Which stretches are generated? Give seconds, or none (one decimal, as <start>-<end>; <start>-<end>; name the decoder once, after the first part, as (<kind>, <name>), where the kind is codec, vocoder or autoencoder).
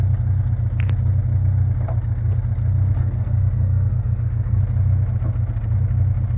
3.0-4.6 (codec, SNAC)